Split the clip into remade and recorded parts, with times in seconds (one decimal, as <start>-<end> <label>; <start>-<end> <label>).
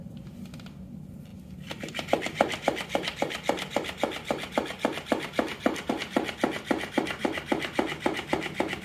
0.0-8.8 recorded